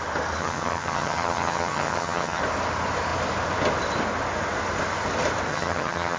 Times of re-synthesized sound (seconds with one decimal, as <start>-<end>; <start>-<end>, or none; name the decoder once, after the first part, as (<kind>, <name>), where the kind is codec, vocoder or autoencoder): 0.4-2.4 (vocoder, HiFi-GAN); 5.5-6.2